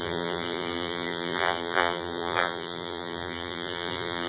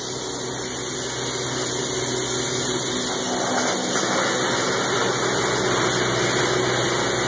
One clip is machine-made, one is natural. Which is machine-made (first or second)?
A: first